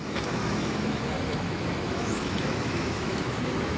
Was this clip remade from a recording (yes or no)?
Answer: yes